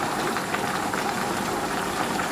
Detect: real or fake fake